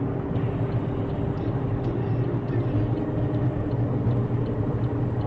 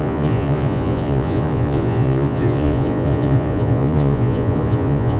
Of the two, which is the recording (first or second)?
first